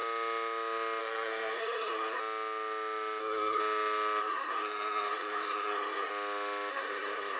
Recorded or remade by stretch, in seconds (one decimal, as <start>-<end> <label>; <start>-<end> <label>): 0.0-1.0 recorded; 1.0-2.2 remade; 2.2-3.2 recorded; 3.2-3.6 remade; 3.6-4.2 recorded; 4.2-6.1 remade; 6.1-6.7 recorded; 6.7-7.4 remade